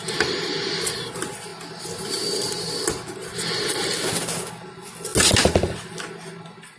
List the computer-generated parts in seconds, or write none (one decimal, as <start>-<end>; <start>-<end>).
none